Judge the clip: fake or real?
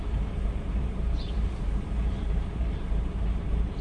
fake